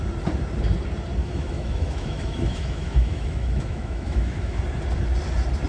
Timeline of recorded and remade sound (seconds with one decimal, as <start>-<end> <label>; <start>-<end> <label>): 0.0-1.2 recorded; 1.2-4.6 remade; 4.6-5.7 recorded